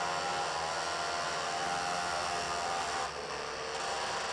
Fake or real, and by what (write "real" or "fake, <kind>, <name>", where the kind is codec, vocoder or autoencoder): real